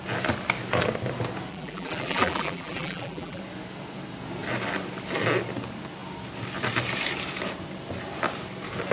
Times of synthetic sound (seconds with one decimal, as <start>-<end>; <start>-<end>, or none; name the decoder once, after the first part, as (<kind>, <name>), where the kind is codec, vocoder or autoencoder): 1.5-3.4 (vocoder, BigVGAN v2)